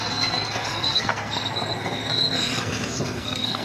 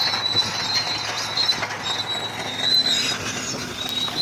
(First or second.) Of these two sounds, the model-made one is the first